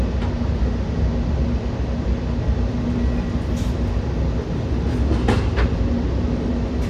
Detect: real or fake real